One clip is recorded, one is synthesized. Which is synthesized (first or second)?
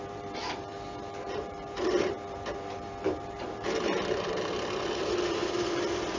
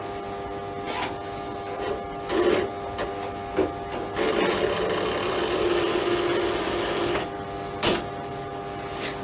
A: first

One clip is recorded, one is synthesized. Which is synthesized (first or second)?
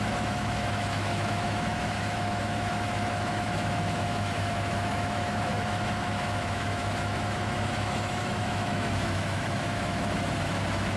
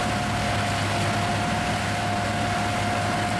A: first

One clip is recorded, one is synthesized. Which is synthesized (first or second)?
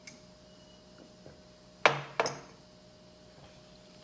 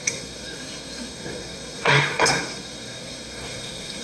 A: second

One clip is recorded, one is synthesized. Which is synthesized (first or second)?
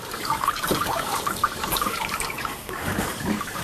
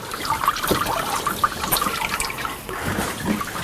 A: first